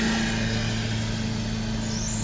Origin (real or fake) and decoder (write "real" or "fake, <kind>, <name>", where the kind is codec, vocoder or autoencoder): real